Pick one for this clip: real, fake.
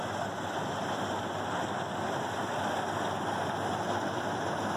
real